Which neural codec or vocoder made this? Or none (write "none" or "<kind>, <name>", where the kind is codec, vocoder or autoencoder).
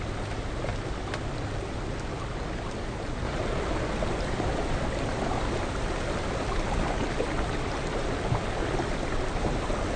none